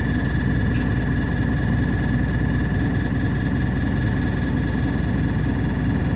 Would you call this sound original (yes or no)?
yes